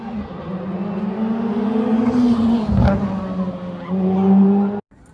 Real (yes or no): yes